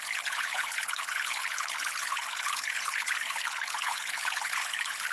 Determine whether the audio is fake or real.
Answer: fake